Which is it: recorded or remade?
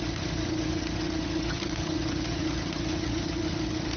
remade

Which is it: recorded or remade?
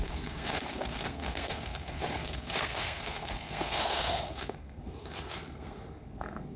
remade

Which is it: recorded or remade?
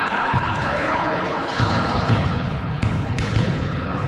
remade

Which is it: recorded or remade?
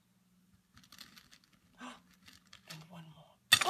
recorded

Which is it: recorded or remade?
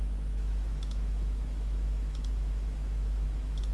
remade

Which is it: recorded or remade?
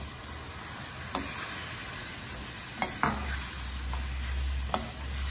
recorded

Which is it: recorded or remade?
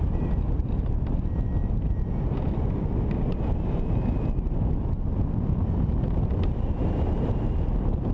recorded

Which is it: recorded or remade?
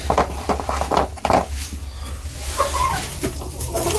recorded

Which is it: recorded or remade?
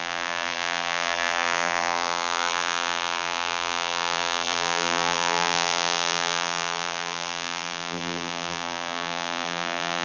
remade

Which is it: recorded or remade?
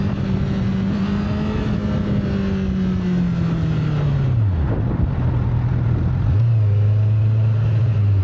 recorded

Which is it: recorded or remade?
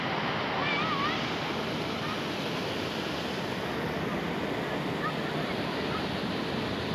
recorded